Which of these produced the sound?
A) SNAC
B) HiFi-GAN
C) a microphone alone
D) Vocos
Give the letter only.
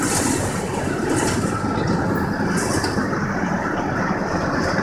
C